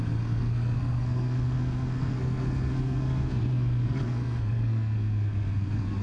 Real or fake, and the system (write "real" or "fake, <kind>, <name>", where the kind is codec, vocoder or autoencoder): fake, codec, SNAC